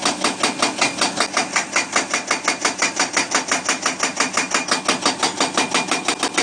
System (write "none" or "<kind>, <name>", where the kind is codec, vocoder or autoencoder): none